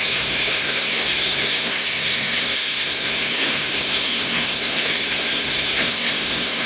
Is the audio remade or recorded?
remade